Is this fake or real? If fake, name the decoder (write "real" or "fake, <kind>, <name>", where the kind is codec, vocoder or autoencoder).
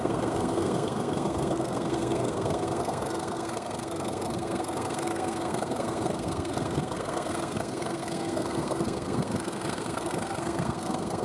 fake, codec, SNAC